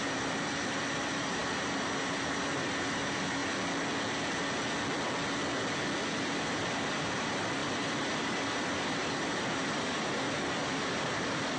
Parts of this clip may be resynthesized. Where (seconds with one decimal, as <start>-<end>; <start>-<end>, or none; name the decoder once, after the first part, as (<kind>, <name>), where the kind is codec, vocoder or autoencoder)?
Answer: 0.0-3.4 (vocoder, BigVGAN v2); 6.1-11.6